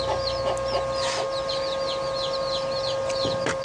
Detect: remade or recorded recorded